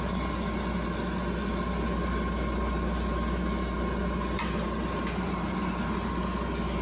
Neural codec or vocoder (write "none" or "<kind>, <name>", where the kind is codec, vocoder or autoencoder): none